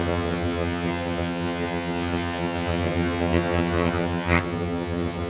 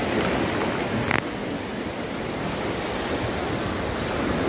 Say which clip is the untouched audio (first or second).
second